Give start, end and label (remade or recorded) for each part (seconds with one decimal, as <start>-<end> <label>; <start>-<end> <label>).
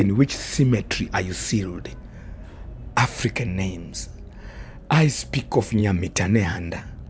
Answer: 0.0-5.8 recorded; 5.8-7.1 remade